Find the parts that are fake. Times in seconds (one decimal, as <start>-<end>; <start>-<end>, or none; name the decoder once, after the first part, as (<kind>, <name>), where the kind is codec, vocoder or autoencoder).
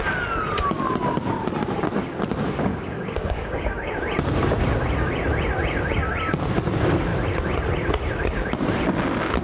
2.7-3.9 (codec, DAC)